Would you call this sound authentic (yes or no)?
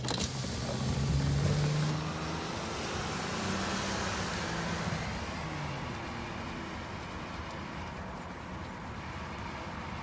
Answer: yes